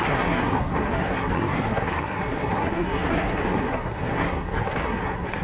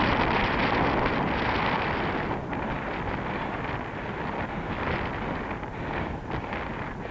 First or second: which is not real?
first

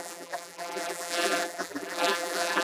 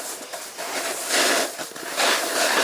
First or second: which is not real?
first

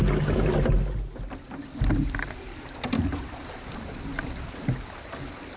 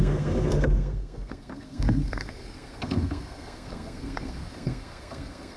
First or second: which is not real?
second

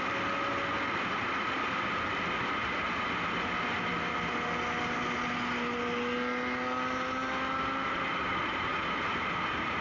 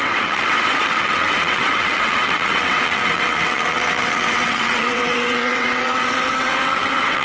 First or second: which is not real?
second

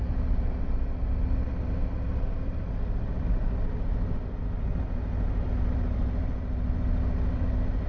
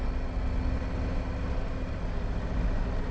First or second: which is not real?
first